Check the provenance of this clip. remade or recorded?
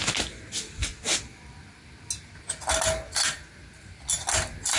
recorded